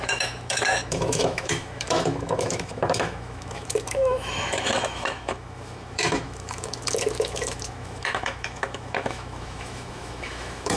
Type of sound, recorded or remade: remade